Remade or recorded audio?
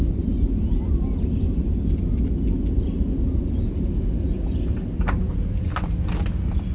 recorded